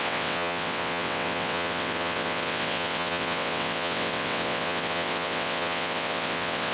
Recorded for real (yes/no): no